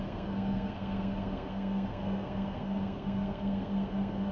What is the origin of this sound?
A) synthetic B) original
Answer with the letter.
A